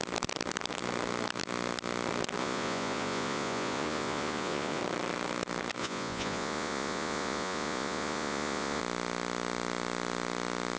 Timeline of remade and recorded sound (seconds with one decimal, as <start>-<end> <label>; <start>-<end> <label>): 0.0-2.4 recorded; 2.4-4.8 remade; 4.8-5.8 recorded; 5.8-8.8 remade; 8.8-10.8 recorded